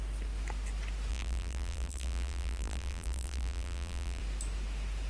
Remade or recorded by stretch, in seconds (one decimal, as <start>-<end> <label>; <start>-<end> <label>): 0.0-1.1 recorded; 1.1-4.2 remade; 4.2-5.1 recorded